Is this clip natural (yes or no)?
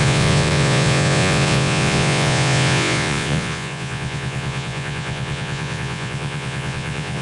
no